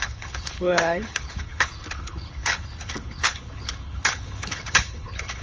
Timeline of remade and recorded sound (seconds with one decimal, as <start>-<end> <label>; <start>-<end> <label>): 0.0-5.4 remade